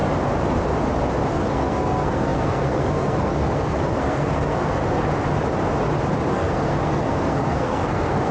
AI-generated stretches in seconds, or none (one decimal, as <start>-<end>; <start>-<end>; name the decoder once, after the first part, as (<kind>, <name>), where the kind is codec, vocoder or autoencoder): 1.3-4.8 (codec, SNAC); 6.3-8.3